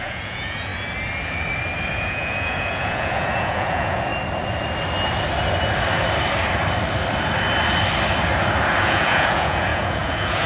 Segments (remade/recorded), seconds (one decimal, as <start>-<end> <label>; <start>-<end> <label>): 0.0-0.7 remade; 0.7-1.9 recorded; 1.9-4.1 remade; 4.1-8.8 recorded; 8.8-10.5 remade